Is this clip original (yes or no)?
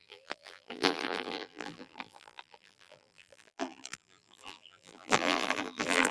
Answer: no